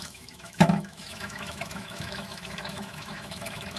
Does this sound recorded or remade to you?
remade